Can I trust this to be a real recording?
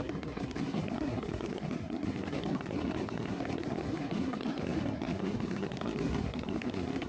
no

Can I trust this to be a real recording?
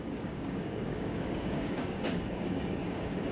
no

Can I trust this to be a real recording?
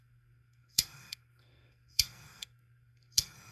no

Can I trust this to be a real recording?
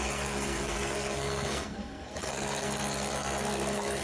no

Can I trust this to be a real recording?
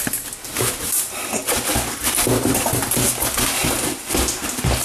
yes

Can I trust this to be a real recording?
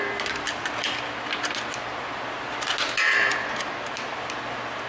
yes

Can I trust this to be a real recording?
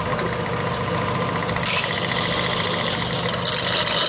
yes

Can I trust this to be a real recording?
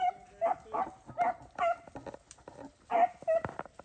yes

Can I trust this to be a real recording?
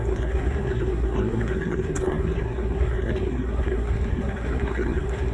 no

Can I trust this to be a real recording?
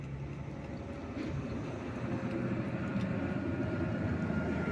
yes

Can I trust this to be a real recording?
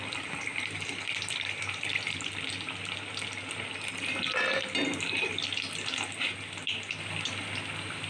yes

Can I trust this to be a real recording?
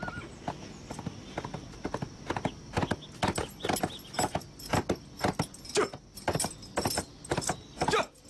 yes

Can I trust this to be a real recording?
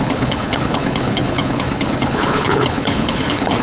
no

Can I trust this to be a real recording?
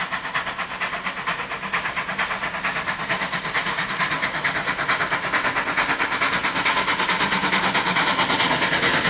yes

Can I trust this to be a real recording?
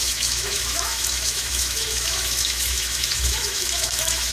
no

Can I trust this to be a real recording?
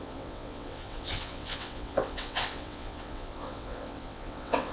no